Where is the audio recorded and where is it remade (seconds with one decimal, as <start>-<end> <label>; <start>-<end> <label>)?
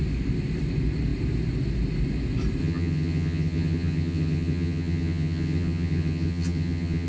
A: 0.0-2.6 recorded; 2.6-7.1 remade